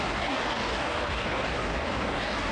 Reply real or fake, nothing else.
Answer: fake